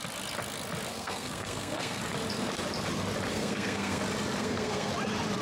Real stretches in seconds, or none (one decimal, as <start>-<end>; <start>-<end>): 0.0-0.9; 2.0-3.3; 4.0-4.4; 4.9-5.4